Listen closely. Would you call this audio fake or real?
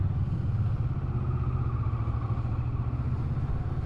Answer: real